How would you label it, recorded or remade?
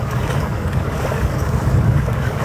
remade